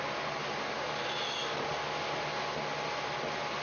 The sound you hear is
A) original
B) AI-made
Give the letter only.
A